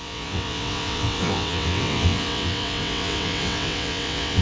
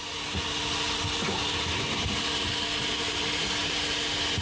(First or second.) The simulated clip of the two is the first